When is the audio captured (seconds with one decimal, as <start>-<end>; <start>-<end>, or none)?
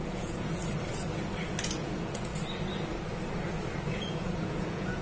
0.6-1.6; 2.3-3.9